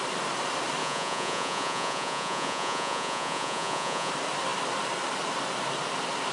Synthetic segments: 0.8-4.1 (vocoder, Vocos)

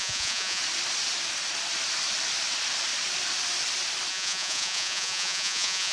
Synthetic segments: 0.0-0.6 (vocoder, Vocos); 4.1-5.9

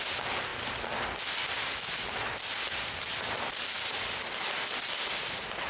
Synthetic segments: none

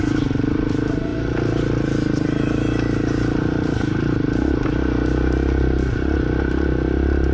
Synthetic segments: none

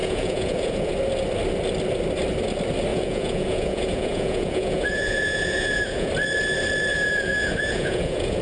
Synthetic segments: 0.0-0.9 (vocoder, Vocos); 2.9-6.1; 6.9-8.4